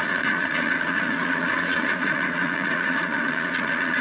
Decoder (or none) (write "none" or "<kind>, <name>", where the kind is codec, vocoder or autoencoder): vocoder, Vocos